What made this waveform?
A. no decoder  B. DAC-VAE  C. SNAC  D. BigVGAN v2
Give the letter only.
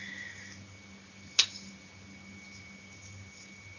A